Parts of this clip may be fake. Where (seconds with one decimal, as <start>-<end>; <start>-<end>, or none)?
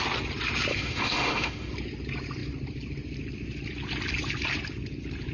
0.7-1.7